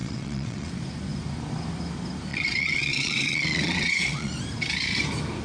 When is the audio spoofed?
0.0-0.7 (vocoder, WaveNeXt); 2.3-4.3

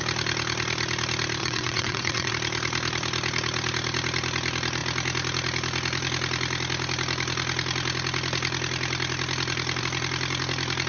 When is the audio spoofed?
1.4-2.3 (vocoder, WaveNeXt)

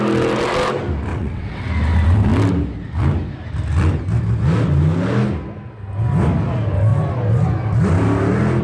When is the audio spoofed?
1.1-1.7 (vocoder, WaveNeXt)

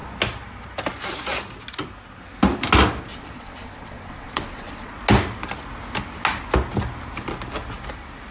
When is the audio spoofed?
3.1-4.9 (vocoder, WaveNeXt)

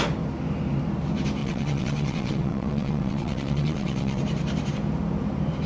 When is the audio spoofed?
1.4-4.2 (vocoder, WaveNeXt)